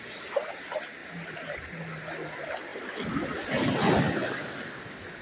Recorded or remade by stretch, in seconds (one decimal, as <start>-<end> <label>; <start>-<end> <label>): 0.0-1.0 recorded; 1.0-1.8 remade; 1.8-5.2 recorded